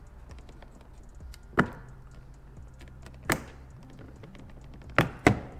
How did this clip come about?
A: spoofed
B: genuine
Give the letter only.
B